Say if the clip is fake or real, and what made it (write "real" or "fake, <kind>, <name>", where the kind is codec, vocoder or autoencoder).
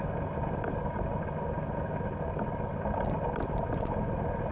real